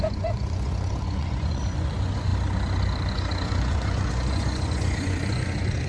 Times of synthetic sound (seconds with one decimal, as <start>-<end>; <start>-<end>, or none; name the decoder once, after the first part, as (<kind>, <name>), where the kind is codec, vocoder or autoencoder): 0.0-2.3 (vocoder, Vocos); 3.1-5.9